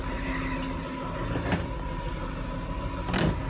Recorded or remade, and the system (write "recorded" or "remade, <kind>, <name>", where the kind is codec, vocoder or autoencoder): recorded